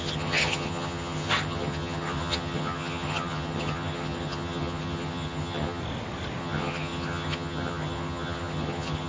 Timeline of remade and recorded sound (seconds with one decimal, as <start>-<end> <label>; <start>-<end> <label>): 0.0-5.8 remade; 5.8-6.4 recorded; 6.4-9.1 remade